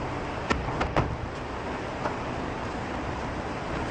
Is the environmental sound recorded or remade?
recorded